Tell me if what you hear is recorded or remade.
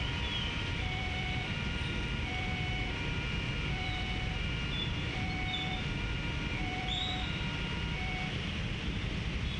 remade